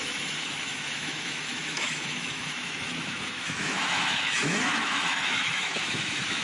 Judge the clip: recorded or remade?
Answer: remade